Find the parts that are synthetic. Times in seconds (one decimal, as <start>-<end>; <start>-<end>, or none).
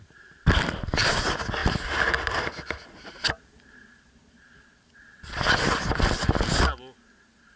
none